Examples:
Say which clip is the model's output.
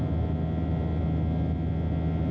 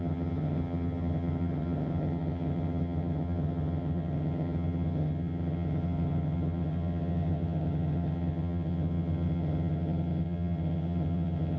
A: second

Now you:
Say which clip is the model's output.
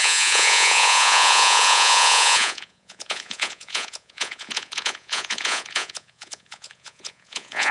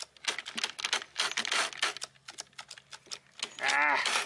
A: first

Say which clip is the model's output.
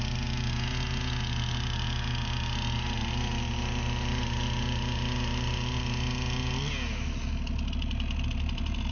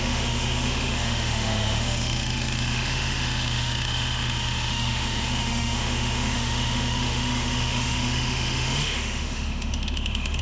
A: second